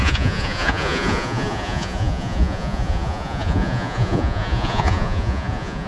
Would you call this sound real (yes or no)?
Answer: no